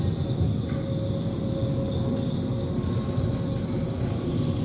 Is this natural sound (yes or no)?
yes